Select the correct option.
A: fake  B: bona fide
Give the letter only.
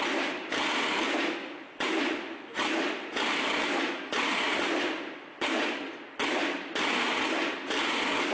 B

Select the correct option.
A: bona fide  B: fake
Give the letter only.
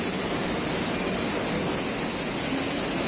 A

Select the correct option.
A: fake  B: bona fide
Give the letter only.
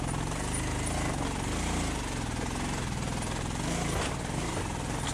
B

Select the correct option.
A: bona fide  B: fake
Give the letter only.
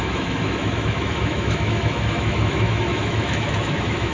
B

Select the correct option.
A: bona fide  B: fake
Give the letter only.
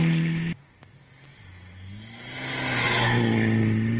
A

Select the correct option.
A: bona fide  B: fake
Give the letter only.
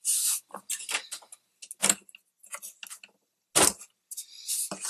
A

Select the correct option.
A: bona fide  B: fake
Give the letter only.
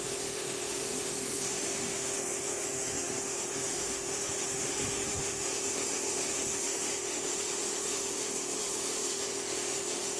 B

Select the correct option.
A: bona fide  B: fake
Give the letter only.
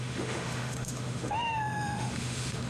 B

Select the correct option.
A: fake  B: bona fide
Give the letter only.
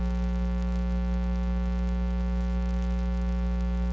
B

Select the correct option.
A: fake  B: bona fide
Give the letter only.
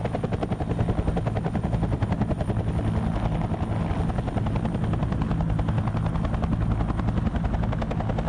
B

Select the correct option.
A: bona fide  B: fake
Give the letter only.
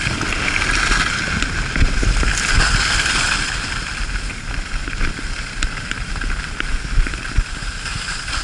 A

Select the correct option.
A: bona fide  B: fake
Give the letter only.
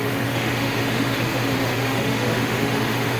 B